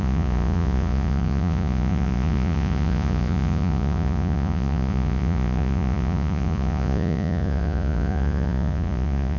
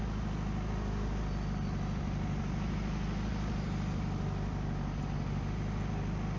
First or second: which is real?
second